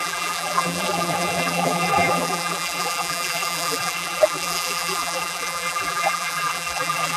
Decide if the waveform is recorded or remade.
remade